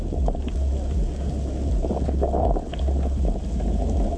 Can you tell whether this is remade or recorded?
recorded